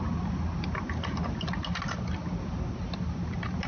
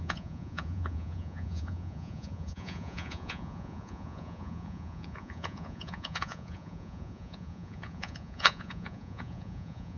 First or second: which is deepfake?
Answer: second